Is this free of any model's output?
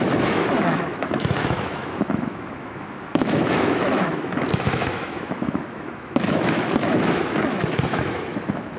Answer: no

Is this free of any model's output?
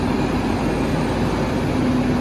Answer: yes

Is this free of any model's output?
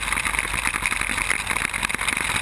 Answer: no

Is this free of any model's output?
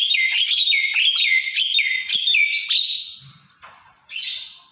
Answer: yes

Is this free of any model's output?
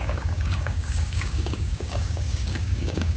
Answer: no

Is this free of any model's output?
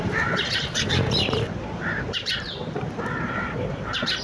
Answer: no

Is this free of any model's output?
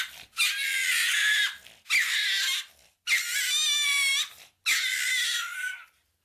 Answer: yes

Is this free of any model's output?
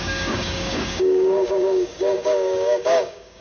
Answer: no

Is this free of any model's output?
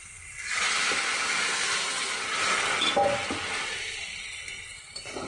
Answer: yes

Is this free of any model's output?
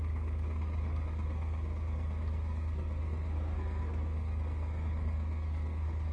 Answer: no